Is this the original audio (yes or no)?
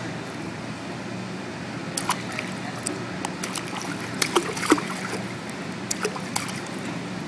yes